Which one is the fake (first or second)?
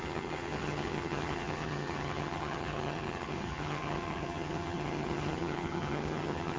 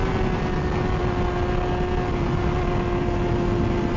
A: first